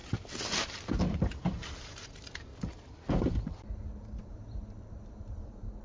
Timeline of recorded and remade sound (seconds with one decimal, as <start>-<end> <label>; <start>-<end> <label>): 0.0-1.5 recorded; 1.5-2.5 remade; 2.5-4.2 recorded; 4.2-5.8 remade